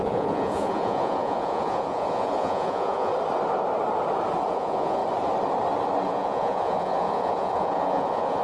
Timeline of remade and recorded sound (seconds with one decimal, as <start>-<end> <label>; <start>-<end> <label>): 0.0-3.1 remade; 3.1-4.5 recorded; 4.5-5.0 remade; 5.0-6.1 recorded; 6.1-8.4 remade